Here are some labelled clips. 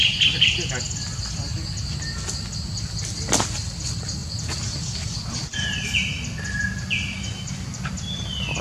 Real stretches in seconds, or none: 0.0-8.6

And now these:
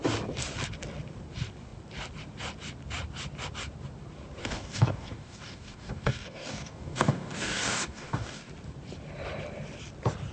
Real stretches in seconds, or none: 0.0-4.4; 8.5-10.3

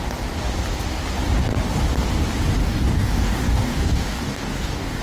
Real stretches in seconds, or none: 0.0-2.6

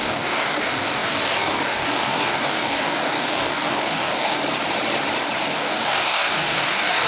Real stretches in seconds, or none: 4.4-5.4

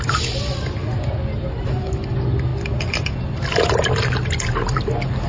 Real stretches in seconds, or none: 0.0-5.3